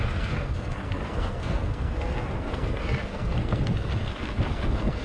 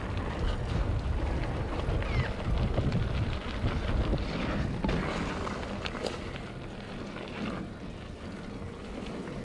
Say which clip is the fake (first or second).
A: first